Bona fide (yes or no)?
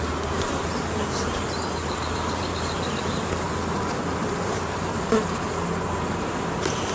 no